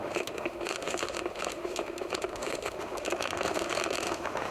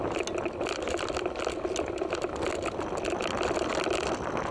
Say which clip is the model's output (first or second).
first